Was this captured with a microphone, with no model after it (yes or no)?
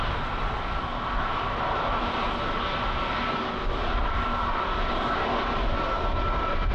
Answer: yes